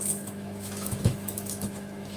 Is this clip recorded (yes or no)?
no